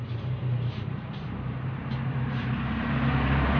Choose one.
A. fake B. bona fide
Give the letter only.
A